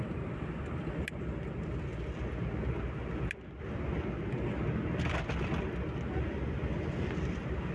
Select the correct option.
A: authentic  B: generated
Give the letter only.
A